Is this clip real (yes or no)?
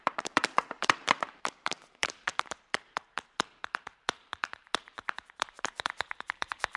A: no